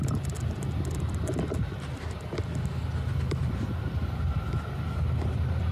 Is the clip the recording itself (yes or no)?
yes